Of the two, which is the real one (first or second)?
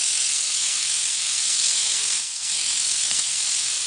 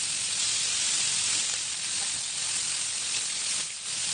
second